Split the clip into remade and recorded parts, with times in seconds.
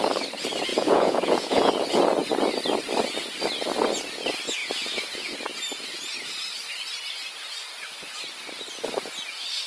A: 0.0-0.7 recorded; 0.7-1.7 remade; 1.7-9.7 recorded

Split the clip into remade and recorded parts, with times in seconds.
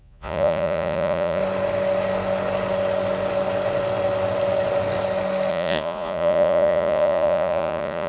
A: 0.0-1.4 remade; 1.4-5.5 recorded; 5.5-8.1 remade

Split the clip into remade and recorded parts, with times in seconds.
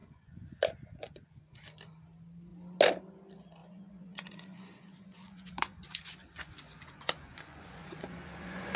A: 0.0-1.6 remade; 1.6-3.6 recorded; 3.6-8.8 remade